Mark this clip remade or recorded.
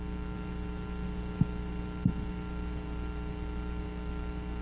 recorded